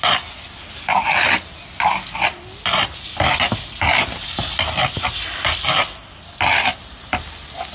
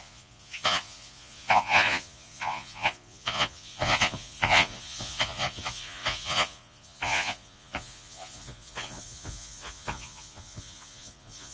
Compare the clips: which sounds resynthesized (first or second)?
second